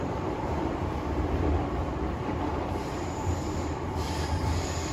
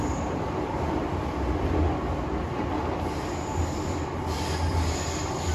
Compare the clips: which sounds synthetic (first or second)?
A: first